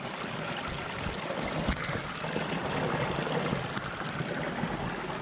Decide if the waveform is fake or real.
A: real